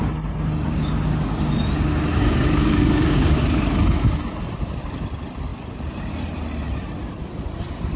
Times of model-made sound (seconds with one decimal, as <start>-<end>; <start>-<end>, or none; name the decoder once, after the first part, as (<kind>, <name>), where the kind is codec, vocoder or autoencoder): 0.0-0.9 (codec, DAC); 2.1-3.4

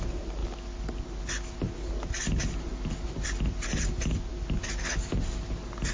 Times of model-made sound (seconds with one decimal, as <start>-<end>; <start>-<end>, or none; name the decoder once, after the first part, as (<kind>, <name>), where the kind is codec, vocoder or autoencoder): none

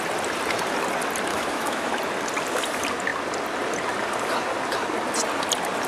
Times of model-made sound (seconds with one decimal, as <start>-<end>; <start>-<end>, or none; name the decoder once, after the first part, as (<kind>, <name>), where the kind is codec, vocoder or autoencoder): 1.3-1.9 (autoencoder, DAC-VAE)